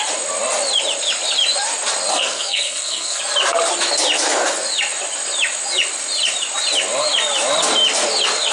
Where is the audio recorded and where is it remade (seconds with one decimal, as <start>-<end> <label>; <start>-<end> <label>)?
0.0-2.1 recorded; 2.1-3.2 remade; 3.2-8.5 recorded